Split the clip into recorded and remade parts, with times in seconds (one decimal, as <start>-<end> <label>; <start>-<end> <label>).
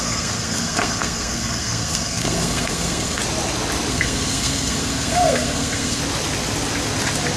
0.0-3.2 remade; 3.2-3.9 recorded; 3.9-6.0 remade; 6.0-7.4 recorded